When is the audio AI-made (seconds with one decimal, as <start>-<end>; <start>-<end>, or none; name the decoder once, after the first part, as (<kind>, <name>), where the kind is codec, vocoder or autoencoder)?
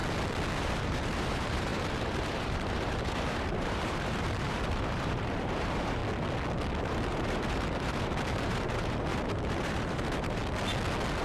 0.6-6.0 (vocoder, BigVGAN v2); 6.8-10.4